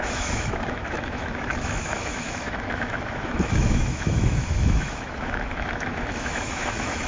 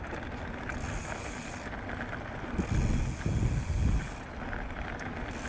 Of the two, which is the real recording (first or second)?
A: second